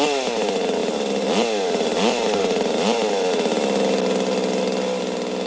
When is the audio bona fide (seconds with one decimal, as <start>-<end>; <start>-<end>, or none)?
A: 0.0-5.5

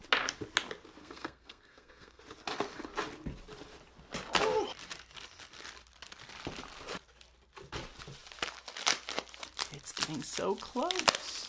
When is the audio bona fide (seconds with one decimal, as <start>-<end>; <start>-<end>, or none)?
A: 0.0-1.0; 2.2-11.5

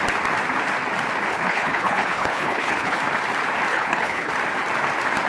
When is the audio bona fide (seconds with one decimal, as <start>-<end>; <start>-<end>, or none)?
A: 0.0-1.3; 3.0-3.7; 4.3-5.3

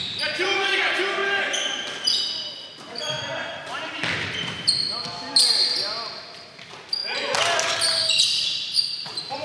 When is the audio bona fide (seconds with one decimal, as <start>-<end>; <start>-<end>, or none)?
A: 1.2-2.5; 7.0-8.8